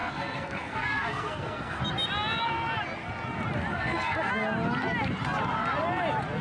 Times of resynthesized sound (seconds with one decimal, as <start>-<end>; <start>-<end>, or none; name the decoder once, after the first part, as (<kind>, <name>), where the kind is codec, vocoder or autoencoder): 0.0-1.8 (codec, SNAC); 3.7-4.3